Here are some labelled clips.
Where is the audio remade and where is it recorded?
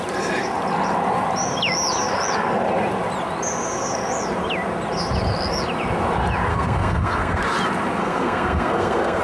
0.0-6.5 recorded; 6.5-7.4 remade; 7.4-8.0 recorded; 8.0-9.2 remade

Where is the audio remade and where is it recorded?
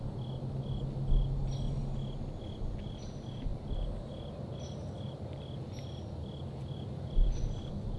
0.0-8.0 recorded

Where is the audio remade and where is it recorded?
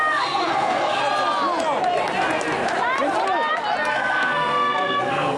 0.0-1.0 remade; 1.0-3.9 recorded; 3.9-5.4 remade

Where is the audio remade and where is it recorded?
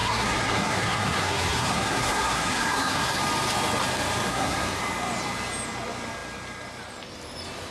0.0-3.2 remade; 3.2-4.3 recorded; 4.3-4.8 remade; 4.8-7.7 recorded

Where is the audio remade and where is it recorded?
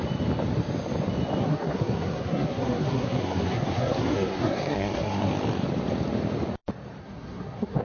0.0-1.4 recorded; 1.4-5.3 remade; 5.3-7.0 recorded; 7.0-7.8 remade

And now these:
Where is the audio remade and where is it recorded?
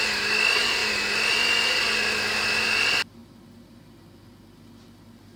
0.0-5.4 recorded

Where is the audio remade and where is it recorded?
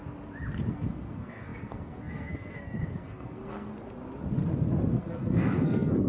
0.0-0.7 recorded; 0.7-3.7 remade; 3.7-4.9 recorded; 4.9-6.1 remade